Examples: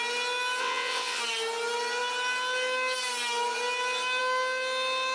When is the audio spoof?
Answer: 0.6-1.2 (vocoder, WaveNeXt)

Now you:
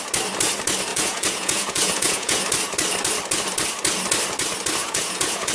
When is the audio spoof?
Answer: 0.9-2.4 (vocoder, Vocos); 4.8-5.5

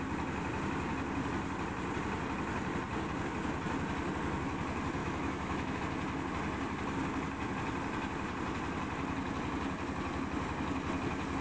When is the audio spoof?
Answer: 5.0-5.8 (autoencoder, DAC-VAE)

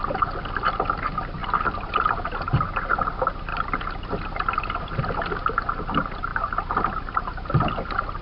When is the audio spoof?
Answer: none

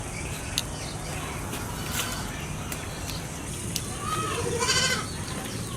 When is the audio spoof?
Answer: none

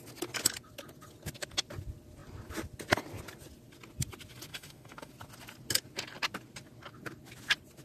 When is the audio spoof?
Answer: 4.5-5.1 (autoencoder, DAC-VAE)

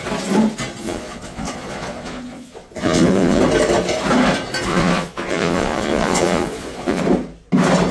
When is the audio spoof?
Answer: 0.8-3.4 (vocoder, Vocos); 4.7-7.0